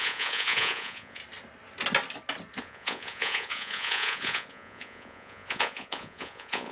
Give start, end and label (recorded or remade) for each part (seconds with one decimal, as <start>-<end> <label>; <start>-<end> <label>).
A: 0.0-1.2 remade; 1.2-2.6 recorded; 2.6-6.7 remade